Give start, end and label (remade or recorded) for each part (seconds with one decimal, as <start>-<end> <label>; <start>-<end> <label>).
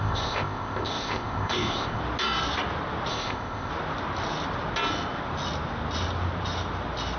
0.0-2.0 remade; 2.0-3.1 recorded; 3.1-3.7 remade; 3.7-7.2 recorded